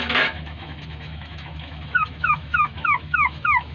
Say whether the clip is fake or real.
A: fake